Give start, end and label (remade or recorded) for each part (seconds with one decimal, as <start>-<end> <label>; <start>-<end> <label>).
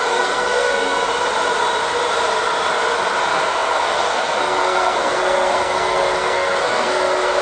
0.0-1.1 remade; 1.1-3.2 recorded; 3.2-7.4 remade